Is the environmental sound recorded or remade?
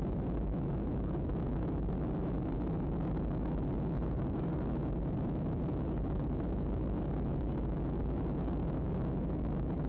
remade